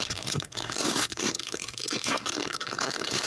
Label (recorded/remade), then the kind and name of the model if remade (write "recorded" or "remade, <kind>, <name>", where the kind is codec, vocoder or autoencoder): remade, codec, SNAC